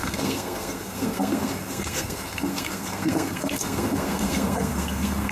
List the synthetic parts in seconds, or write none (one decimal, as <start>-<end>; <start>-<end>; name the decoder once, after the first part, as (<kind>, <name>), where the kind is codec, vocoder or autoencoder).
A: 0.0-5.3 (codec, SNAC)